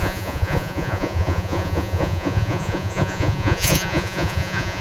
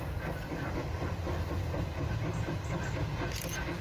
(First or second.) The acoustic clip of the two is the second